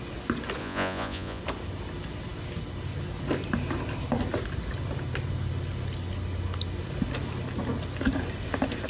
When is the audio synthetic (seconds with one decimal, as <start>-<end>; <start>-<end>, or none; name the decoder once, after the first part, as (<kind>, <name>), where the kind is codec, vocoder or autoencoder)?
0.6-1.4 (vocoder, Vocos)